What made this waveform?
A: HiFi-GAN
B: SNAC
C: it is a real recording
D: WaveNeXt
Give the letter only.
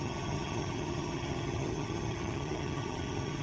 A